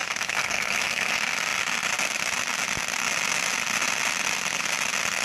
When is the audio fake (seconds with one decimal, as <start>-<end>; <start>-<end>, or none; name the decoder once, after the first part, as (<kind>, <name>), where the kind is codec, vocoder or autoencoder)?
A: 0.0-1.1 (codec, SNAC)